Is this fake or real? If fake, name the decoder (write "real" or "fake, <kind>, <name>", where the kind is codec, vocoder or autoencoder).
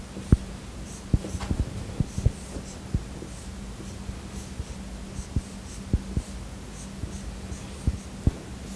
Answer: real